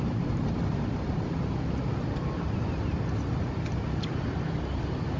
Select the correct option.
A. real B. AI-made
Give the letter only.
A